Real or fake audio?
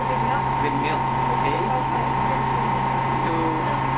real